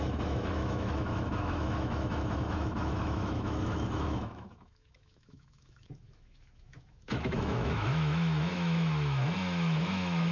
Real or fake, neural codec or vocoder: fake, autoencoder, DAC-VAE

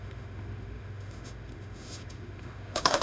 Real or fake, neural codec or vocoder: fake, autoencoder, DAC-VAE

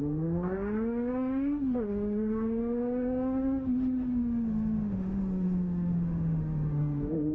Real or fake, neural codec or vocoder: fake, autoencoder, DAC-VAE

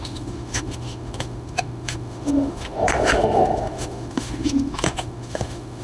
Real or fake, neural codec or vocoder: fake, autoencoder, DAC-VAE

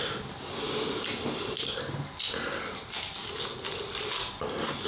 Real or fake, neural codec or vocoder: real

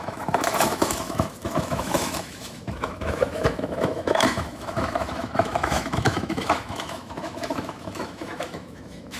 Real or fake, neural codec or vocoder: fake, autoencoder, DAC-VAE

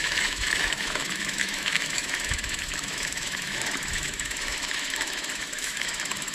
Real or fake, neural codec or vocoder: fake, autoencoder, DAC-VAE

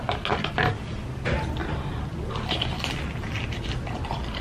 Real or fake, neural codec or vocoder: real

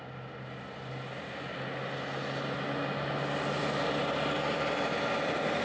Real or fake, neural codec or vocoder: real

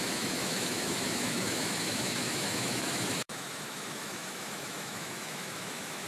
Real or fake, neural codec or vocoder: fake, autoencoder, DAC-VAE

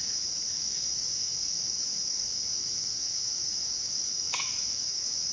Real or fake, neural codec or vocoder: fake, autoencoder, DAC-VAE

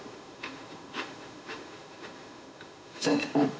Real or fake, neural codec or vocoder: fake, autoencoder, DAC-VAE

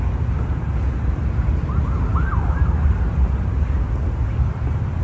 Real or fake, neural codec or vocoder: real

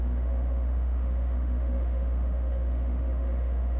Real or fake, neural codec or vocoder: fake, autoencoder, DAC-VAE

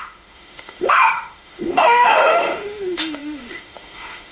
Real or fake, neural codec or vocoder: fake, autoencoder, DAC-VAE